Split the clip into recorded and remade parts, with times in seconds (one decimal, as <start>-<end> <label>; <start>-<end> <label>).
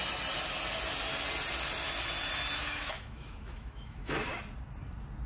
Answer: 0.0-2.6 recorded; 2.6-4.3 remade; 4.3-5.3 recorded